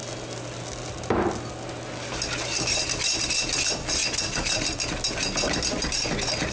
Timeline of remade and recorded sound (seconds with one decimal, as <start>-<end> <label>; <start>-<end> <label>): 0.0-6.5 recorded